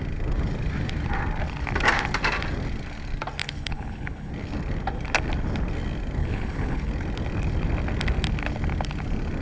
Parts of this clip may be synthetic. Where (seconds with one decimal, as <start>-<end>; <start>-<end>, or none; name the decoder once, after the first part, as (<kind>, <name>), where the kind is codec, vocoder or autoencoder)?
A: 3.4-4.3 (codec, HILCodec); 6.2-6.9